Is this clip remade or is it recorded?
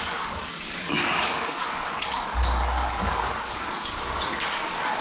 remade